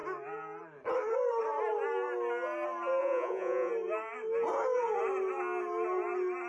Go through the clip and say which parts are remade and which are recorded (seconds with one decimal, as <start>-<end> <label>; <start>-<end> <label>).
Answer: 0.0-3.0 recorded; 3.0-3.7 remade; 3.7-6.5 recorded